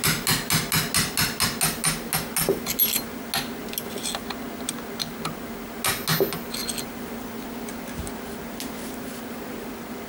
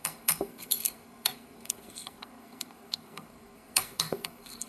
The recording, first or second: first